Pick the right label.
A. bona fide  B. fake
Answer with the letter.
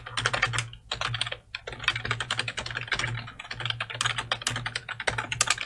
A